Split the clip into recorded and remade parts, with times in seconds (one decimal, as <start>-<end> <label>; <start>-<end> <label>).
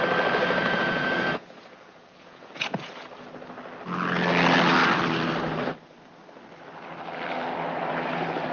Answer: 0.0-0.4 recorded; 0.4-2.9 remade; 2.9-8.5 recorded